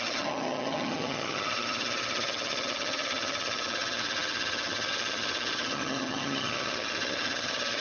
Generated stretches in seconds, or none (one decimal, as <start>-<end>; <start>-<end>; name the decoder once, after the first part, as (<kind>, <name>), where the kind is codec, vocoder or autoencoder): 0.0-7.8 (vocoder, HiFi-GAN)